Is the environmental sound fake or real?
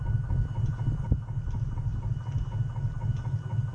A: real